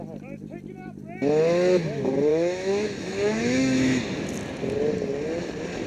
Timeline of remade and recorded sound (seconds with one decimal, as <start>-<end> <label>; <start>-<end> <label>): 0.0-2.3 recorded; 2.3-4.0 remade; 4.0-5.9 recorded